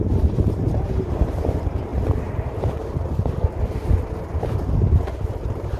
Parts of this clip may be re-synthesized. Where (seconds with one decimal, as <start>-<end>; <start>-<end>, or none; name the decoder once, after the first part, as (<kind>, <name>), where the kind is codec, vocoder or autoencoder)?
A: none